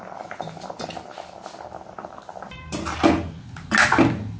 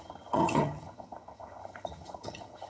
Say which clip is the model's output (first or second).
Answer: second